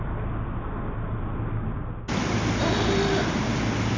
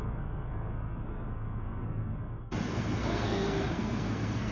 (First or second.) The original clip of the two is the first